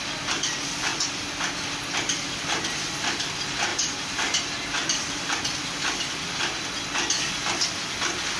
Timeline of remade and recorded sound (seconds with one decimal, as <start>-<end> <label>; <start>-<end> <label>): 0.0-8.4 recorded